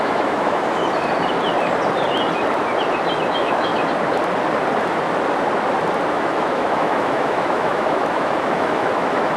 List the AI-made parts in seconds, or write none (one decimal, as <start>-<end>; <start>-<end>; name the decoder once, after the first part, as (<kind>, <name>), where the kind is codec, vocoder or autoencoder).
0.0-0.8 (autoencoder, DAC-VAE); 3.3-3.7; 6.1-9.4